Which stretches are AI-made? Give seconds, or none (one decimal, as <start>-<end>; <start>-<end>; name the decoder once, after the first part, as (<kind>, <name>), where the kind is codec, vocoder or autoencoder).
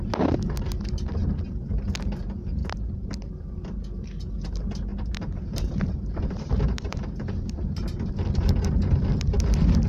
2.6-3.1 (vocoder, BigVGAN v2); 4.9-8.1